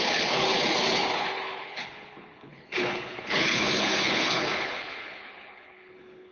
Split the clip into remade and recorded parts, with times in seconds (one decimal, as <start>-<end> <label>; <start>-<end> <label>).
0.0-6.3 remade

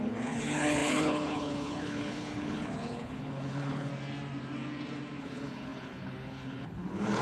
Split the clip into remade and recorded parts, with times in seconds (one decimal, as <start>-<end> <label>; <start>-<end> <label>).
0.0-3.9 remade; 3.9-5.2 recorded; 5.2-7.2 remade

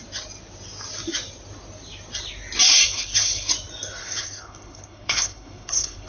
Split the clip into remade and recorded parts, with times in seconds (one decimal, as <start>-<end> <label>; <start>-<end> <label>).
0.0-2.9 recorded; 2.9-3.5 remade; 3.5-4.0 recorded; 4.0-6.1 remade

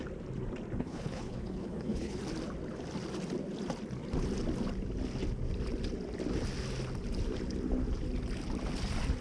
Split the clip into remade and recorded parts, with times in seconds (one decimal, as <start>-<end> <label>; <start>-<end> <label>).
0.0-0.8 recorded; 0.8-2.2 remade; 2.2-9.2 recorded

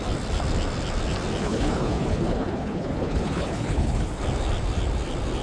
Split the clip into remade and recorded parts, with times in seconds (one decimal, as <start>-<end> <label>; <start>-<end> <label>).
0.0-1.4 recorded; 1.4-4.2 remade; 4.2-5.4 recorded